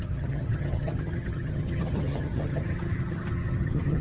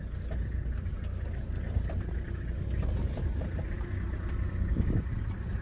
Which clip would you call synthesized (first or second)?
first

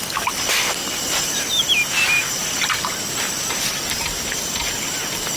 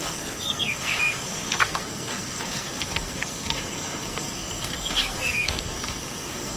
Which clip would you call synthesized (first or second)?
second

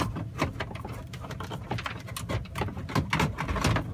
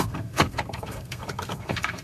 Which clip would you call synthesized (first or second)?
second